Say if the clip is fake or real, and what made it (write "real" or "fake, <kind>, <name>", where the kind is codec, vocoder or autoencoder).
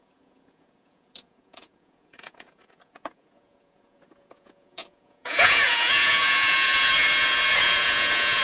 fake, vocoder, Vocos